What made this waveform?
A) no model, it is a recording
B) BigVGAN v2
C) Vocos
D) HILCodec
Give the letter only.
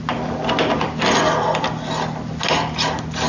A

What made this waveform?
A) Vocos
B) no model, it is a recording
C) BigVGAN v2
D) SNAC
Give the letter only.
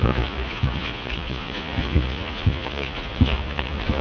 A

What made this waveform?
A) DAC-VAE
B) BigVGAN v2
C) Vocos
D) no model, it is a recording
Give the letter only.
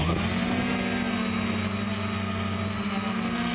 D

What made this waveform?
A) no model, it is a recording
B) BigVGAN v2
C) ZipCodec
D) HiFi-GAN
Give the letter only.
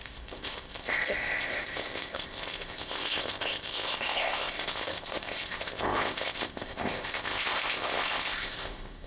C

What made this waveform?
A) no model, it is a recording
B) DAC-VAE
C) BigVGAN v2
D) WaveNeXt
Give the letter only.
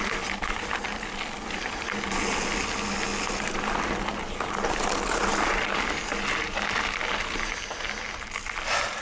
A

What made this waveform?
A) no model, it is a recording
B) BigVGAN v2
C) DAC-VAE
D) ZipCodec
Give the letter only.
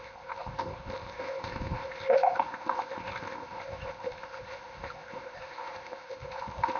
D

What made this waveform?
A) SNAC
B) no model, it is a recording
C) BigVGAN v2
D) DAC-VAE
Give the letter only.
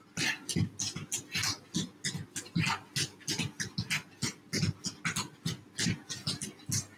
B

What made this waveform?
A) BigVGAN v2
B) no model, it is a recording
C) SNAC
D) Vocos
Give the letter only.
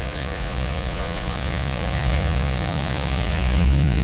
D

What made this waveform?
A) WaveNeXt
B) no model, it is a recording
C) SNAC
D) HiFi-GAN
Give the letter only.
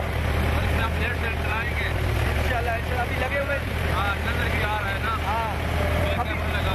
B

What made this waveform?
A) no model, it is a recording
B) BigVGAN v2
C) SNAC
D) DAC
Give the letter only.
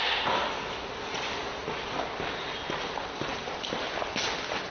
A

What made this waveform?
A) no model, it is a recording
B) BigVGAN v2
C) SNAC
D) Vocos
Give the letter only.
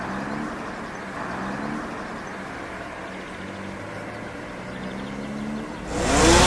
A